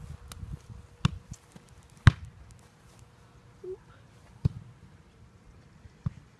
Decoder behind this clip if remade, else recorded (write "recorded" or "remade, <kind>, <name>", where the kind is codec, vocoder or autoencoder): recorded